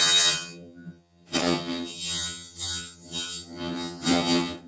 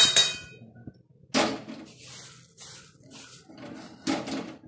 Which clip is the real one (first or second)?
second